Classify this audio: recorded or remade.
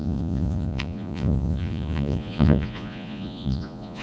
remade